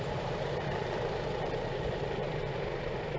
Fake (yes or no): yes